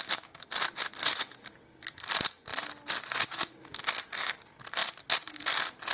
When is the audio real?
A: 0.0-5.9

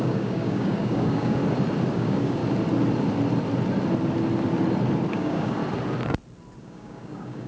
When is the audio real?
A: 1.4-1.9; 2.4-5.1; 5.6-6.6